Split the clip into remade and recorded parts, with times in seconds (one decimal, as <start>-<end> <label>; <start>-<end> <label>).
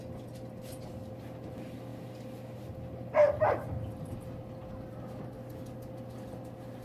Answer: 0.0-6.8 recorded